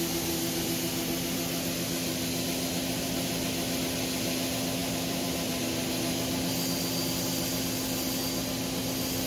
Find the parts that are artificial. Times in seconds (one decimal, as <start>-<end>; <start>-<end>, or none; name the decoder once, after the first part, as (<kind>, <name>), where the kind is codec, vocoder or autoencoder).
4.8-5.6 (vocoder, BigVGAN v2)